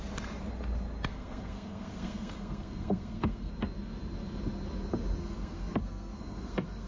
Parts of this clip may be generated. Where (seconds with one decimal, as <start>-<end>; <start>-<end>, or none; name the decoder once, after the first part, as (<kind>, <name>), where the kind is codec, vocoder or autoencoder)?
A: 1.1-3.5 (codec, SNAC); 5.2-6.9